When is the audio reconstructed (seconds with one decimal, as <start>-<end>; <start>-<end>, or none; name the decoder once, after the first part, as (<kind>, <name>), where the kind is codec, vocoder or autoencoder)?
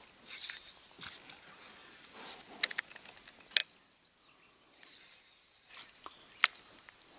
none